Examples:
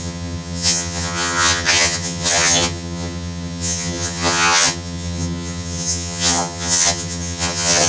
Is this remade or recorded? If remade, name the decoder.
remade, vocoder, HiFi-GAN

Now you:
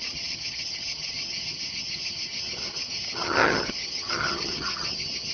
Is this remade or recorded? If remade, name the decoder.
remade, vocoder, HiFi-GAN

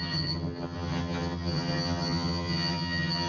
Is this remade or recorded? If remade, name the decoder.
remade, vocoder, HiFi-GAN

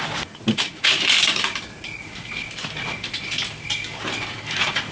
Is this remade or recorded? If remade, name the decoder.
recorded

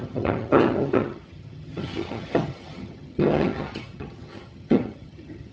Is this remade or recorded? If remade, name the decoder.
remade, vocoder, HiFi-GAN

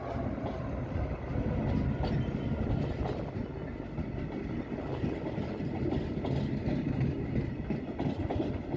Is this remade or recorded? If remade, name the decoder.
recorded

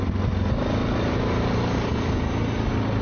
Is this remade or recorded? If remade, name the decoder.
recorded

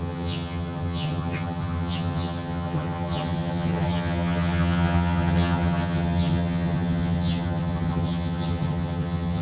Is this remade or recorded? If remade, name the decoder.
remade, vocoder, HiFi-GAN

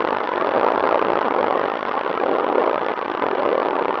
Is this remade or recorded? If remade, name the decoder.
remade, vocoder, HiFi-GAN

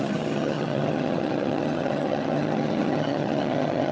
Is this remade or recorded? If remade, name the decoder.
remade, vocoder, HiFi-GAN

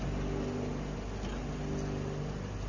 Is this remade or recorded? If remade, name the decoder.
recorded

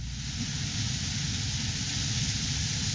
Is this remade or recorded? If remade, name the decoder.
recorded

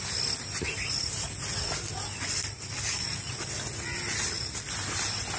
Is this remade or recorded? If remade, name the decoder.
recorded